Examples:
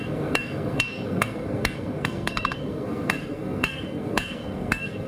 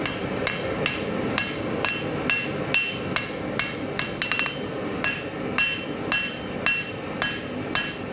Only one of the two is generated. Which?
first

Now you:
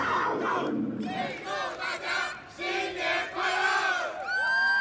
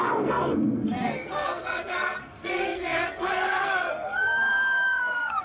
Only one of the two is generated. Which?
second